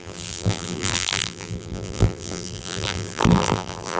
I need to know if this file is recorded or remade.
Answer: remade